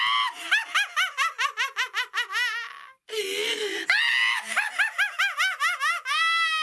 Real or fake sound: real